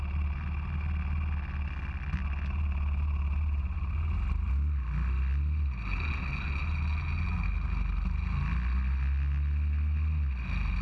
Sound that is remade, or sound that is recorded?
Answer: recorded